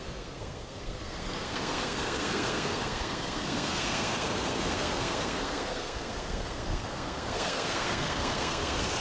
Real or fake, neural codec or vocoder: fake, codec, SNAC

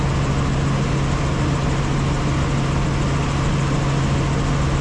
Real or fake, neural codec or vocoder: real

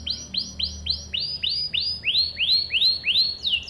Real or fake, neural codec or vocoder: real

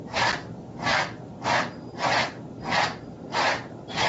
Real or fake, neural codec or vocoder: real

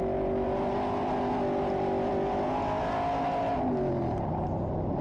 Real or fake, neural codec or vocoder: real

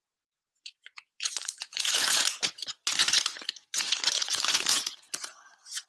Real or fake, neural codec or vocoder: fake, vocoder, Vocos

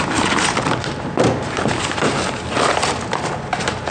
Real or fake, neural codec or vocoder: real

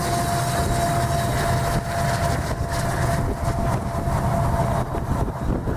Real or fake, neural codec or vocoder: real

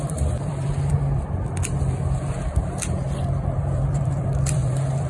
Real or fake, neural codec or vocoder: fake, vocoder, BigVGAN v2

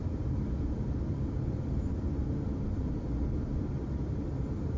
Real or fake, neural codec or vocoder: real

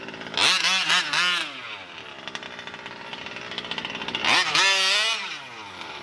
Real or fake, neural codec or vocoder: real